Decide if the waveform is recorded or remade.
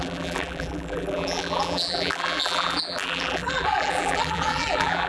remade